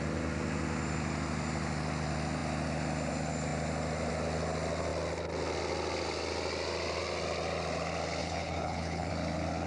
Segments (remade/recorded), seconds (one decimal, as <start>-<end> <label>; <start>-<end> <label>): 0.0-8.2 recorded; 8.2-9.1 remade; 9.1-9.7 recorded